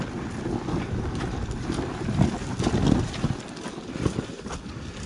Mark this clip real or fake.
real